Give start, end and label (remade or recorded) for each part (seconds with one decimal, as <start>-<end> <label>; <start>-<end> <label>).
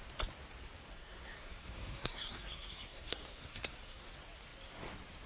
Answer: 0.0-0.9 recorded; 0.9-4.1 remade; 4.1-5.3 recorded